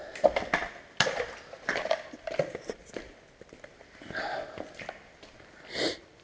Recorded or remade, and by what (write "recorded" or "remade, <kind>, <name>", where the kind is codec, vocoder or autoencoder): recorded